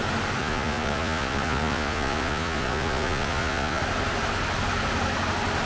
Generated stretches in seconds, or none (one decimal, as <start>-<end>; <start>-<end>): 0.4-3.8